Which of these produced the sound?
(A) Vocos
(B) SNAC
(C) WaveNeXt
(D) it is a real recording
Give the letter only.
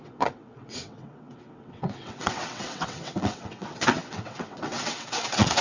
C